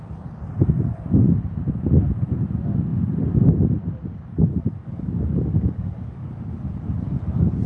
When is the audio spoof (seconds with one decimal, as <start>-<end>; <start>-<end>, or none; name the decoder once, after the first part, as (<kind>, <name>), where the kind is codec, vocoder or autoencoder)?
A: 4.8-6.4 (codec, DAC)